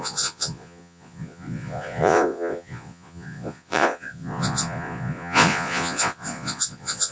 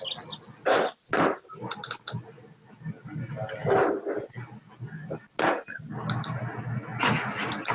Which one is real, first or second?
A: second